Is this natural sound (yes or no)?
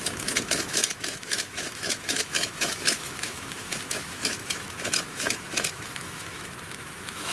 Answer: no